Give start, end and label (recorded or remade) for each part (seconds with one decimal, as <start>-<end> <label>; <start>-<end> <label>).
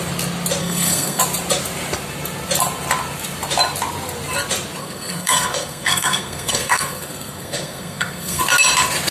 0.0-0.6 recorded; 0.6-1.2 remade; 1.2-4.8 recorded; 4.8-8.4 remade; 8.4-9.1 recorded